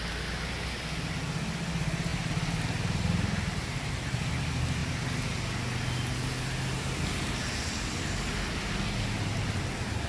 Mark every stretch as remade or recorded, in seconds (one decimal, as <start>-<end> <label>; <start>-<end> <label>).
0.0-2.1 recorded; 2.1-4.3 remade; 4.3-10.1 recorded